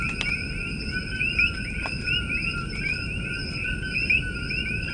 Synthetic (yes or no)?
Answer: no